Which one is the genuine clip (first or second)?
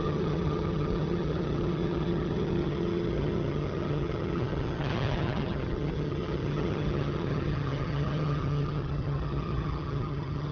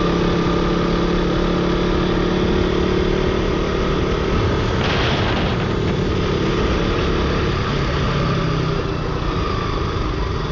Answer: second